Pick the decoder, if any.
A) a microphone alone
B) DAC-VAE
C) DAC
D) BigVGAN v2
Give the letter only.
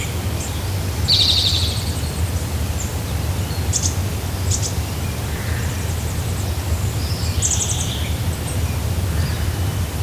A